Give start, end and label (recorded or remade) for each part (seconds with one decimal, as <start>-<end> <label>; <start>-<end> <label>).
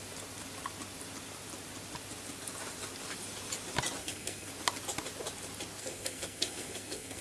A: 0.0-4.0 recorded; 4.0-4.5 remade; 4.5-5.8 recorded; 5.8-7.2 remade